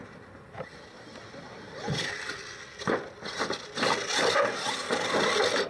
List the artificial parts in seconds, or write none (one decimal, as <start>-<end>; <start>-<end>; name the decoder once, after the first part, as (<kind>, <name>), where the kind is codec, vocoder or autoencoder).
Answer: none